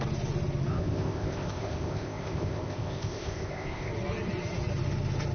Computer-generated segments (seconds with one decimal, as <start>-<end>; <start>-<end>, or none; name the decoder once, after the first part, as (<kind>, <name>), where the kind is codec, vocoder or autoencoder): 0.7-3.9 (codec, ZipCodec)